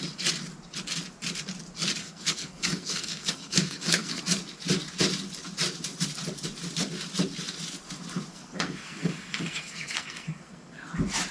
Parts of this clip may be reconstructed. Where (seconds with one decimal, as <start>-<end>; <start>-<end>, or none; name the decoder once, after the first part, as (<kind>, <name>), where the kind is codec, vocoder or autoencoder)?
2.0-4.2 (codec, SNAC); 8.3-10.9